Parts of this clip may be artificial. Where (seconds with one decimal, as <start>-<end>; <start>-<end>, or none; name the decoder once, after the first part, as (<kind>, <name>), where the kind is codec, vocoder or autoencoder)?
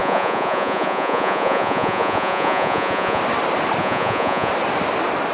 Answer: 0.0-3.2 (vocoder, Vocos); 3.8-4.5